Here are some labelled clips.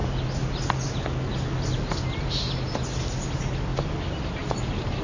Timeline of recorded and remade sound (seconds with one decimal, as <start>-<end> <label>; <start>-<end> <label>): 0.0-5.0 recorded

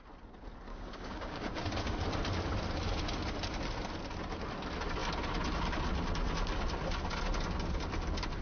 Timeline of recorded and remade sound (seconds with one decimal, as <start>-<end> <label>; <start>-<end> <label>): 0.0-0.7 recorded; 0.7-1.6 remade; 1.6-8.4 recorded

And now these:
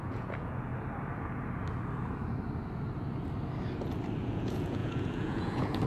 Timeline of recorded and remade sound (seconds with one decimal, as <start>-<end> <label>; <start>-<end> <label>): 0.0-0.7 remade; 0.7-4.2 recorded; 4.2-5.9 remade

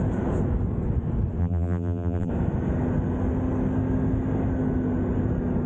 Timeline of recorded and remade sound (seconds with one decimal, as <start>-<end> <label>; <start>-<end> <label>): 0.0-1.4 recorded; 1.4-2.3 remade; 2.3-5.7 recorded

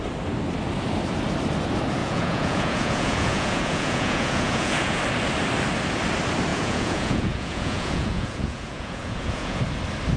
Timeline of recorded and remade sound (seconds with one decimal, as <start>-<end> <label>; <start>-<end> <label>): 0.0-2.0 recorded; 2.0-5.0 remade; 5.0-6.5 recorded; 6.5-9.6 remade; 9.6-10.2 recorded

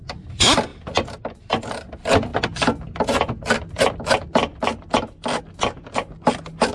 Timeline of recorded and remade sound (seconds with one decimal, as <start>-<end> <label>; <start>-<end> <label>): 0.0-6.7 recorded